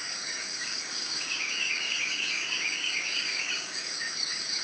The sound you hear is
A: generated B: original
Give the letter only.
A